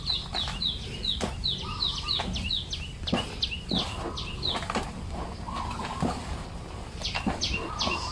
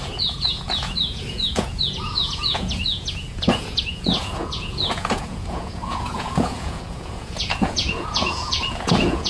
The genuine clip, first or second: first